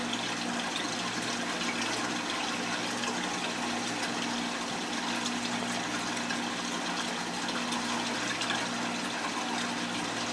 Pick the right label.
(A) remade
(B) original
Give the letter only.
B